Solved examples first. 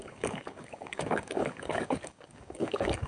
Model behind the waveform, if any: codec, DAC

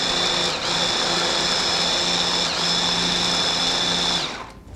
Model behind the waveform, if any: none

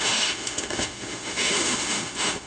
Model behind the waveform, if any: autoencoder, DAC-VAE